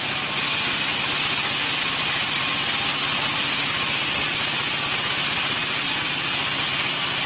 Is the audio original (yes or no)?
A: yes